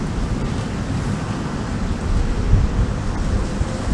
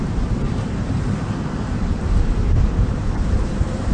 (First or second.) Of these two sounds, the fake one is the second